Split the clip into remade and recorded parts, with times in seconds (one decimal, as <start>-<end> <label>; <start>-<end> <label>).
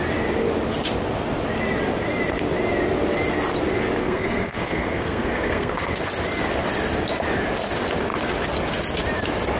0.0-4.0 recorded; 4.0-5.9 remade; 5.9-9.6 recorded